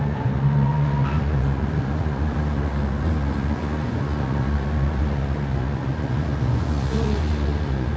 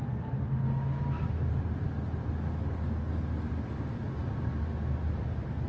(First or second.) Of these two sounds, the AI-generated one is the first